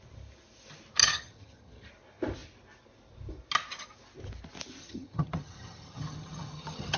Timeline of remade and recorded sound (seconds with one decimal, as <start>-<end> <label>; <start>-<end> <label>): 0.0-1.0 recorded; 1.0-1.9 remade; 1.9-4.8 recorded; 4.8-7.0 remade